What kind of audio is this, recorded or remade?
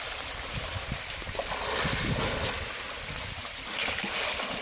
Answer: recorded